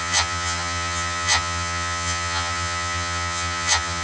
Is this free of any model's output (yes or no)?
no